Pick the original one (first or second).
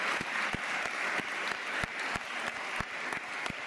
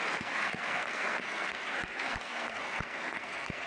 first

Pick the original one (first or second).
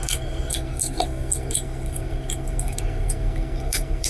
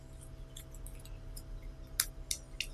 second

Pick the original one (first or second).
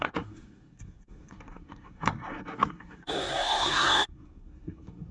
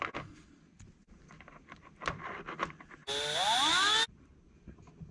second